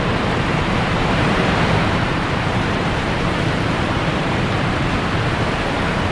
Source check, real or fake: fake